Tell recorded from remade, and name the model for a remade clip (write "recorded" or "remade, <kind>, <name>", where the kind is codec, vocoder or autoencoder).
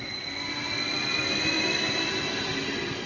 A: recorded